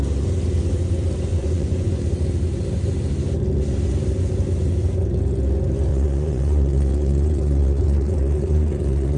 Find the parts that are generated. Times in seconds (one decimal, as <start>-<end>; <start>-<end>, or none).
1.3-2.0; 5.9-9.2